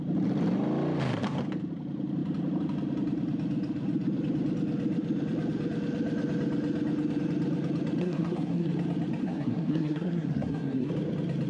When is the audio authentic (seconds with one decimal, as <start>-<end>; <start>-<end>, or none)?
0.0-8.0; 8.7-9.2; 10.9-11.5